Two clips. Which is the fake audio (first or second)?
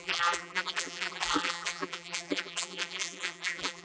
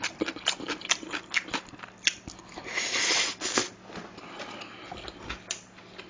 first